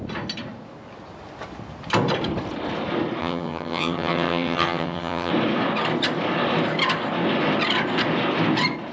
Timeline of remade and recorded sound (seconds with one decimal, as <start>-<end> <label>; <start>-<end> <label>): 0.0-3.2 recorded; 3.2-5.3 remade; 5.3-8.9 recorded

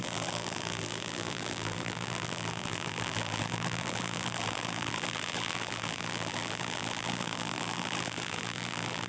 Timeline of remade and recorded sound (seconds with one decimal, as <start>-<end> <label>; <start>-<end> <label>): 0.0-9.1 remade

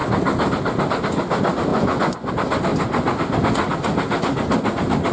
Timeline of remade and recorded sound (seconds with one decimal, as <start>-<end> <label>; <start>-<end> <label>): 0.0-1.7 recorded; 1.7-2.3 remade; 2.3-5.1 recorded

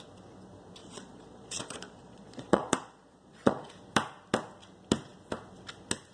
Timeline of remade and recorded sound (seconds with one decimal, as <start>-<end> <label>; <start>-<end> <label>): 0.0-0.8 recorded; 0.8-3.7 remade; 3.7-6.1 recorded

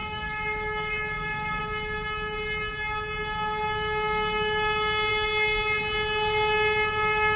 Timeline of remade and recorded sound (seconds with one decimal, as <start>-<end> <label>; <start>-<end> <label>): 0.0-1.6 remade; 1.6-5.1 recorded; 5.1-5.8 remade; 5.8-7.4 recorded

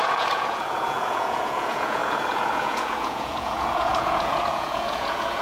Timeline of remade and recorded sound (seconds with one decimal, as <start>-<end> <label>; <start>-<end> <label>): 0.0-5.4 remade